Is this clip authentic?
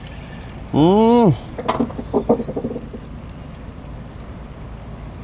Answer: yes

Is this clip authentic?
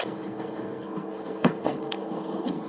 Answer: no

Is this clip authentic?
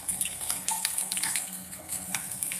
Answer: no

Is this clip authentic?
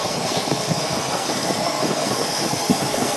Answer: no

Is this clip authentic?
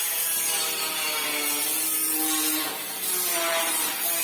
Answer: yes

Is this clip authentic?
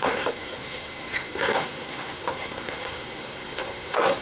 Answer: no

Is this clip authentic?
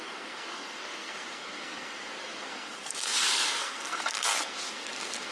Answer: no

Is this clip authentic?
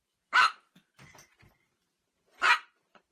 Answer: yes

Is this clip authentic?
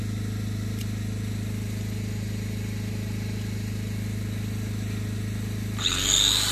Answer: yes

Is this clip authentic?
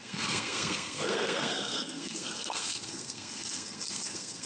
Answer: no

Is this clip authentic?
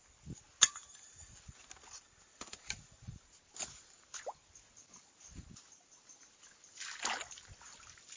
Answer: yes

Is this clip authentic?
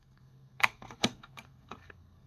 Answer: no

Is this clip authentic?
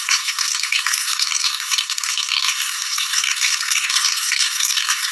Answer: no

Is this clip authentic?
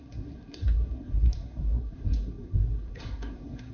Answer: no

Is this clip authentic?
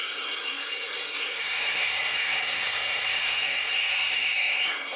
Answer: no